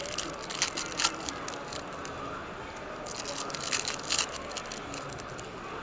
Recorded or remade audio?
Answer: recorded